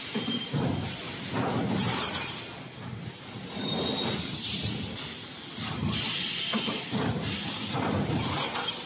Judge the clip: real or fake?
real